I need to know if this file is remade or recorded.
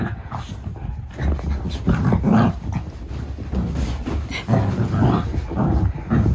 recorded